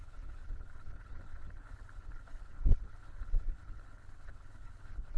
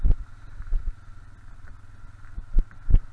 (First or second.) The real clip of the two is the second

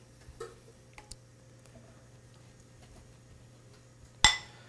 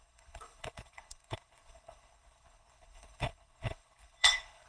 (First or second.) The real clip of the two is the first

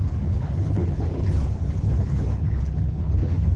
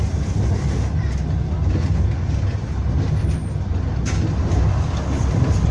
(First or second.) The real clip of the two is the second